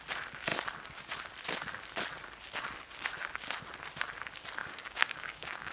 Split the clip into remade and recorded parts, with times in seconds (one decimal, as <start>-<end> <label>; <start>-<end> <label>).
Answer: 0.0-4.6 recorded; 4.6-5.7 remade